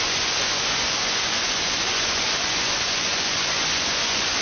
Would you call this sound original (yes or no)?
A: no